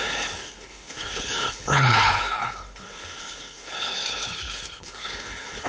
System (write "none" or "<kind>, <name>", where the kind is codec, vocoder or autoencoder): codec, HILCodec